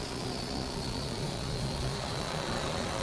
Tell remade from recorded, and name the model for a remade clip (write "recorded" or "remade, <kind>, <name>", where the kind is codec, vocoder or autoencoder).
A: remade, vocoder, Vocos